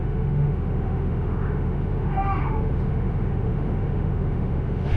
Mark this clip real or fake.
fake